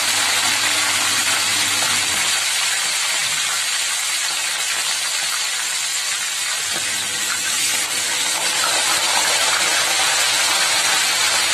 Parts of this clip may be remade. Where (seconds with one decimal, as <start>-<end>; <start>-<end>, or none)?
3.2-4.4; 8.8-9.6